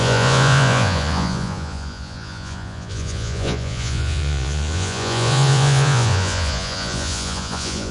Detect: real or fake fake